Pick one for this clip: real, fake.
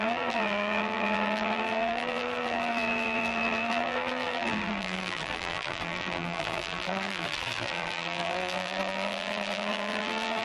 fake